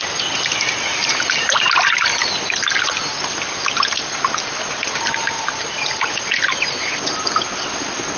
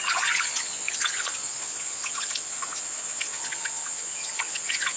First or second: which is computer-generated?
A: second